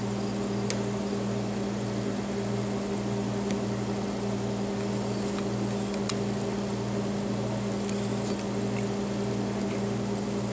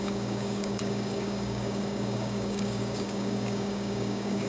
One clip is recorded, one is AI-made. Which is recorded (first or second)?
first